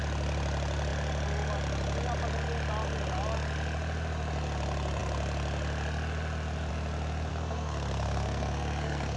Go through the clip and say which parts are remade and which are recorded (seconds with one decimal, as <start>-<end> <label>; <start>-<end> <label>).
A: 0.0-7.3 recorded; 7.3-9.2 remade